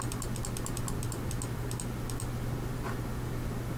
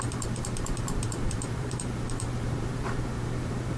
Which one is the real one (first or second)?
first